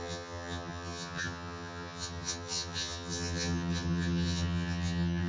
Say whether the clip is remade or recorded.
remade